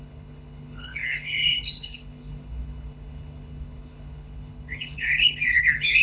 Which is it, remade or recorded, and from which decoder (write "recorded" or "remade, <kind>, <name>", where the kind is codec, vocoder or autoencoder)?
remade, codec, HILCodec